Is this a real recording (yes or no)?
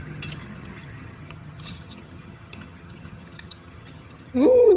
no